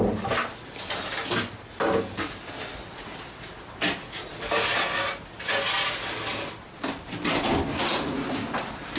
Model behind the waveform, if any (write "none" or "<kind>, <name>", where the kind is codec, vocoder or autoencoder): none